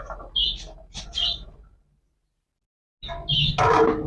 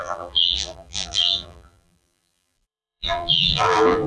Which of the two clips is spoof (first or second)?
second